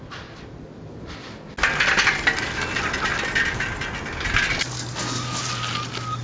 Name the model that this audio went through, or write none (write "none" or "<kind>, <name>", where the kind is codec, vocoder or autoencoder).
none